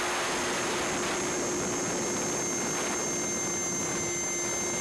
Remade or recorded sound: recorded